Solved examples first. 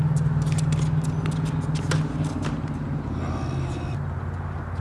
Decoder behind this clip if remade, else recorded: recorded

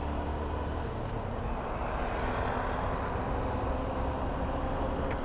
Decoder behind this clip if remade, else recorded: recorded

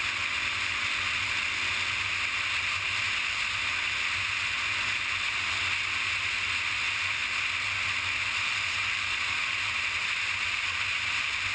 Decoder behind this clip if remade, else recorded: recorded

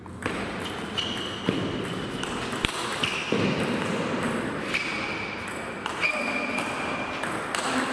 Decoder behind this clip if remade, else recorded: recorded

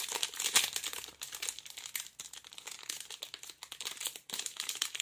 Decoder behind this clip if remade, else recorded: recorded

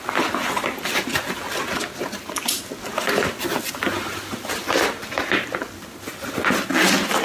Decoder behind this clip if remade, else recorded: recorded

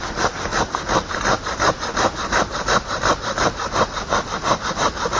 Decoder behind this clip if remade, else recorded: recorded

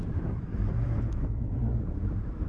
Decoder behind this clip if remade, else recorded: remade, autoencoder, DAC-VAE